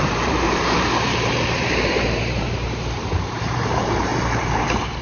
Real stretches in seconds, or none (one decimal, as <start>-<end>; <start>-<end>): none

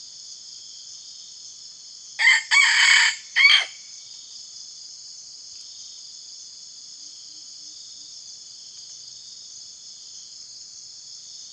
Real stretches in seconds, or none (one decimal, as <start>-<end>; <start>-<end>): 2.1-2.6

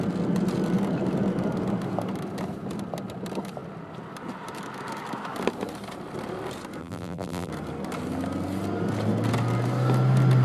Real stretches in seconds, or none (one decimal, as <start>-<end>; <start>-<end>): 0.0-6.8; 7.5-10.4

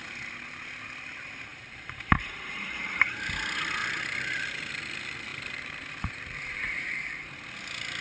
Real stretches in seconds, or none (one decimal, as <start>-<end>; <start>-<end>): 0.0-1.5; 2.8-5.3; 7.3-8.0

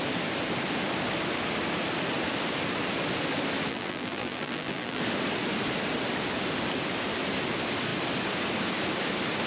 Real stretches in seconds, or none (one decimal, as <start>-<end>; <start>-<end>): 0.0-3.7; 5.0-9.5

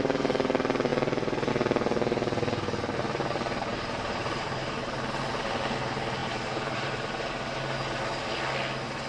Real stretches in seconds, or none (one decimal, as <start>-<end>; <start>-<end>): 0.0-3.7; 5.2-6.2; 7.6-9.1

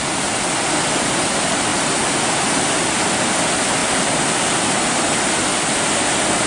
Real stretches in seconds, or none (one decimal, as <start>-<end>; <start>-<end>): 0.0-6.5